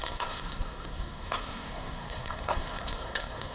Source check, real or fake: fake